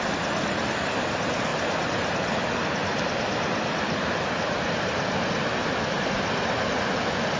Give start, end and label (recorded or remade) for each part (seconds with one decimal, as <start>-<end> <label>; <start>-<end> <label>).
0.0-7.4 recorded

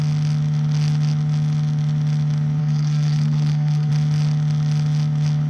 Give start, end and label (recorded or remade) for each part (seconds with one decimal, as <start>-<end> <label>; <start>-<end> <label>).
0.0-2.6 recorded; 2.6-3.9 remade; 3.9-5.5 recorded

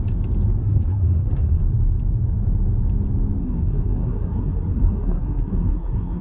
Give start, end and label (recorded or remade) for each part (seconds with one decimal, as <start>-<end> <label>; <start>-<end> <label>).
0.0-0.6 recorded; 0.6-1.6 remade; 1.6-3.4 recorded; 3.4-6.2 remade

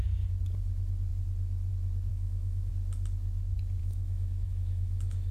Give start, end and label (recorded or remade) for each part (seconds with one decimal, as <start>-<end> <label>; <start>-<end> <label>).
0.0-2.1 recorded; 2.1-2.7 remade; 2.7-3.8 recorded; 3.8-5.3 remade

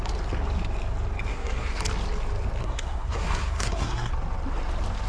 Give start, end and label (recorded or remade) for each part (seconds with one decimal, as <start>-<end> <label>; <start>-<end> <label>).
0.0-1.3 recorded; 1.3-1.8 remade; 1.8-2.6 recorded; 2.6-4.1 remade; 4.1-5.1 recorded

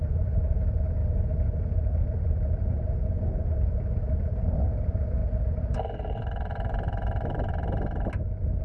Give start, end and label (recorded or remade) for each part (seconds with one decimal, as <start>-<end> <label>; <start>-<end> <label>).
0.0-1.0 remade; 1.0-1.7 recorded; 1.7-5.2 remade; 5.2-6.5 recorded; 6.5-7.5 remade; 7.5-8.2 recorded; 8.2-8.6 remade

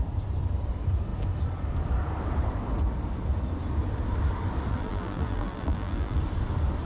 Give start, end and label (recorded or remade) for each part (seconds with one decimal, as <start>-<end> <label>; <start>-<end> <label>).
0.0-4.7 recorded; 4.7-6.2 remade; 6.2-6.9 recorded